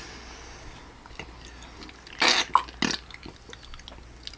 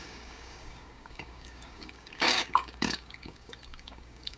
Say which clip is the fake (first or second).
second